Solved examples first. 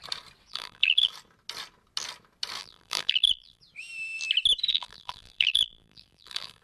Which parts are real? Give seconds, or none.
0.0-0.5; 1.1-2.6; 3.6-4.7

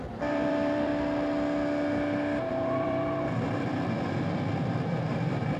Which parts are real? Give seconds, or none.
0.9-2.5